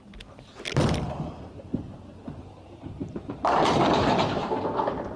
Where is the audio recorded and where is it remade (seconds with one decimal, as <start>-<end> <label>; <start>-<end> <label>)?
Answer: 0.0-1.7 recorded; 1.7-4.5 remade; 4.5-5.2 recorded